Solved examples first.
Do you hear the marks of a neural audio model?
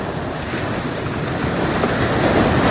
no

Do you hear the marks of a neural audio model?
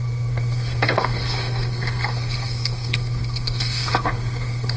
yes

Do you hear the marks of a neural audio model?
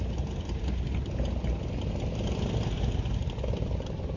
no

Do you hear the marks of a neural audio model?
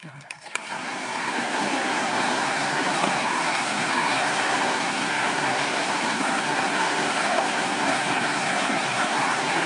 yes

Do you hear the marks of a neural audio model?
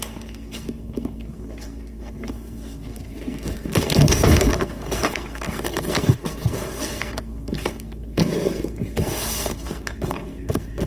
yes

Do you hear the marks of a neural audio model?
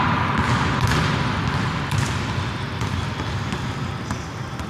no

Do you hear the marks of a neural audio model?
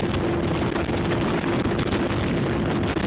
no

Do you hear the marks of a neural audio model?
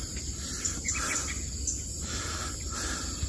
no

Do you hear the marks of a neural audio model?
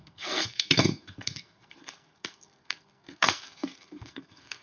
yes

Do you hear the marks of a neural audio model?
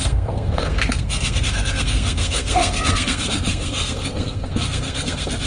yes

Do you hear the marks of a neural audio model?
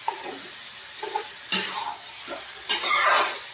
no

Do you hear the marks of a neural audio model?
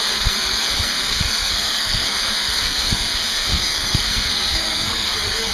yes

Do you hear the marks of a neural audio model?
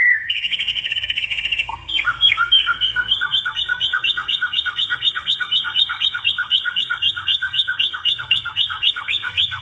yes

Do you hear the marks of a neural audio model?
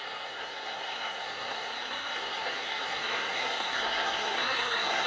yes